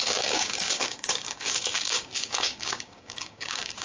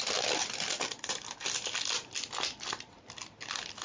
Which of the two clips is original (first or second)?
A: second